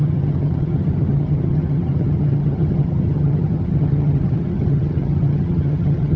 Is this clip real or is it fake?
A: fake